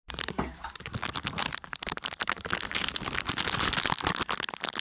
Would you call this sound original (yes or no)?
yes